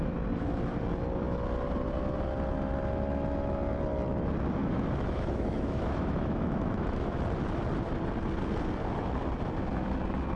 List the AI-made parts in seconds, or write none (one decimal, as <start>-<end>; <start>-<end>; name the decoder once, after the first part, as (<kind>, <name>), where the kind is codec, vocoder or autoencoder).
4.6-7.2 (autoencoder, DAC-VAE)